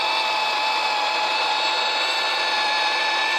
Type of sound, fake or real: real